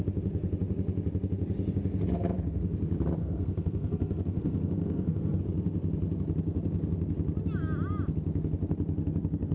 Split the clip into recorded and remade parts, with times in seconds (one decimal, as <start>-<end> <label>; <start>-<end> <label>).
0.0-3.2 recorded; 3.2-5.4 remade; 5.4-9.5 recorded